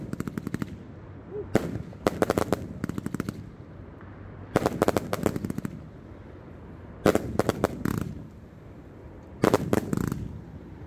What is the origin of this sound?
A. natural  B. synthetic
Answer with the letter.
A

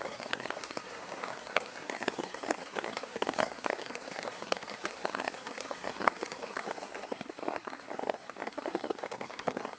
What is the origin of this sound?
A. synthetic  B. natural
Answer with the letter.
A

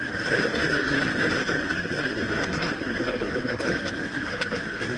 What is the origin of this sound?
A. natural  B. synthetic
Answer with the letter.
B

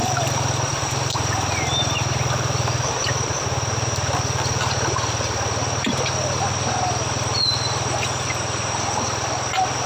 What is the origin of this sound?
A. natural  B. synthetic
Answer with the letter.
B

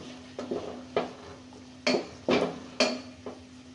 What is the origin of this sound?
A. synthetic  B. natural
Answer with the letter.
B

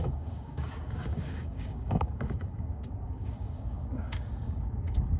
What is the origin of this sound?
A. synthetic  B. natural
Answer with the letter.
A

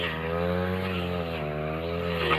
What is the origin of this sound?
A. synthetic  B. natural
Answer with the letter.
B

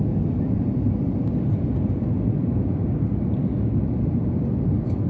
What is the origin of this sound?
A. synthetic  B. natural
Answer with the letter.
B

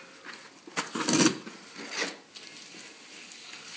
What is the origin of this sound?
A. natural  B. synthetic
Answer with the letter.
A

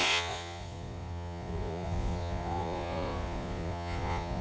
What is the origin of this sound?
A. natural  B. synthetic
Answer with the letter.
B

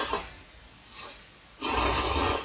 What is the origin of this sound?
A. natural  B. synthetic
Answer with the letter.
A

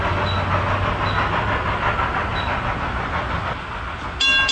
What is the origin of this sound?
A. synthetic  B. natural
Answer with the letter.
B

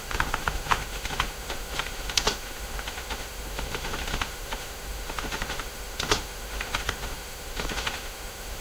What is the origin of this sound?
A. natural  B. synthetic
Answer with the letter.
B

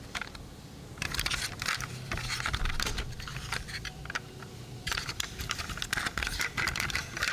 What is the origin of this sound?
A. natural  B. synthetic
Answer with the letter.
B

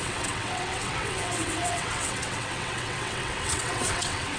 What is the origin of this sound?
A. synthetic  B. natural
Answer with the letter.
A